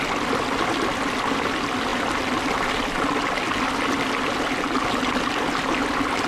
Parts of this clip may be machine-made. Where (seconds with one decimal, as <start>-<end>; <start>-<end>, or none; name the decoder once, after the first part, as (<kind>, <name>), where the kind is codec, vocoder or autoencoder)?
none